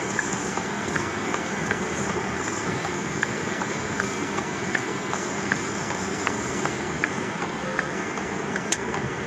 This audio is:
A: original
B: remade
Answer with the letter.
B